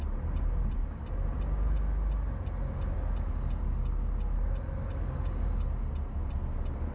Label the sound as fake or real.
real